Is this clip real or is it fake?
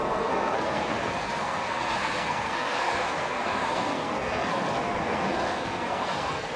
fake